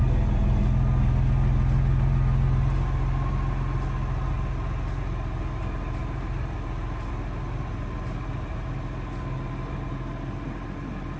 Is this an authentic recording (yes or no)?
yes